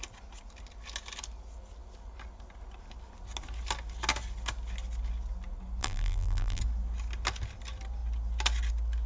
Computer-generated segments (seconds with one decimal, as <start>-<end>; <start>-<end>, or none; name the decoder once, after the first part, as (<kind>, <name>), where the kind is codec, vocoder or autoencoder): 5.8-6.6 (vocoder, BigVGAN v2)